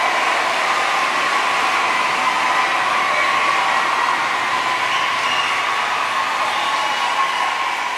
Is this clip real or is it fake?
real